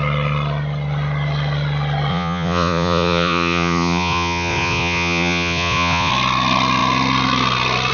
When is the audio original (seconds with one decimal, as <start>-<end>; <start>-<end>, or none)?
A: 0.0-2.1; 6.1-7.9